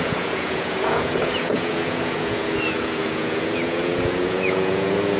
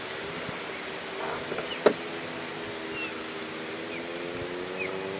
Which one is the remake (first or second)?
first